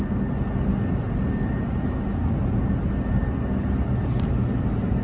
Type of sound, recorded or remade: recorded